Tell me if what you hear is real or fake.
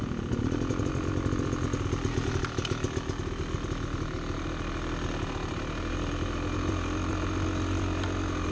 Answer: real